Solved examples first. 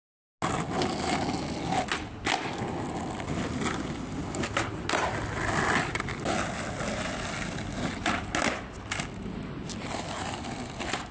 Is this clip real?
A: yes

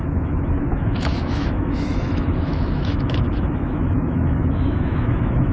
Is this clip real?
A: no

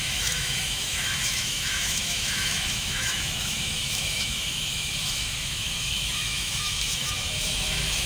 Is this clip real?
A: no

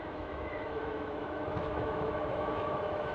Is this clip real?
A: no